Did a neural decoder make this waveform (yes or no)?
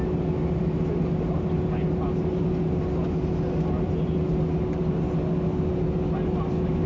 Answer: no